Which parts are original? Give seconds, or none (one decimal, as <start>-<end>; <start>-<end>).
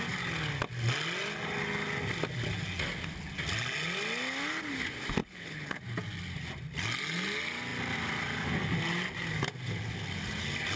0.0-5.2; 5.8-10.8